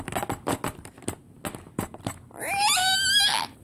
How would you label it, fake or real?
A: real